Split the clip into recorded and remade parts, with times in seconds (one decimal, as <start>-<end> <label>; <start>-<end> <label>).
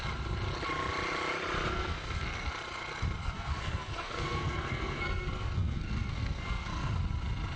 0.0-1.7 recorded; 1.7-2.5 remade; 2.5-3.2 recorded; 3.2-6.9 remade; 6.9-7.6 recorded